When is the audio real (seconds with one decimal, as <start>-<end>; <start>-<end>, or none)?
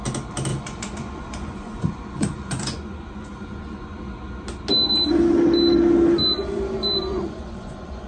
0.0-0.5; 4.0-7.1